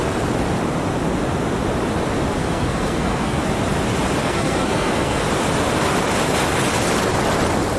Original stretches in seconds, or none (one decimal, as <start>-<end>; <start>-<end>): 0.0-2.4; 3.4-4.2; 5.2-7.8